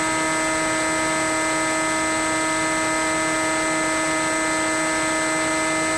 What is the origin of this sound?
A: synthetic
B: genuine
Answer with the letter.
B